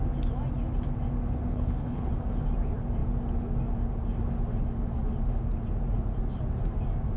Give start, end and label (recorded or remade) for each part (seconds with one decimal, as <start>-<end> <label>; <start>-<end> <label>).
0.0-1.5 recorded; 1.5-2.1 remade; 2.1-7.2 recorded